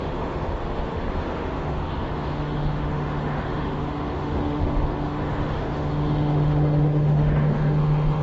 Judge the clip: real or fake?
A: fake